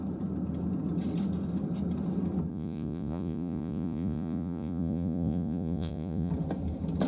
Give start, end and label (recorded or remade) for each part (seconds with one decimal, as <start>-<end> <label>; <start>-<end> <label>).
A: 0.0-2.5 recorded; 2.5-6.3 remade; 6.3-7.1 recorded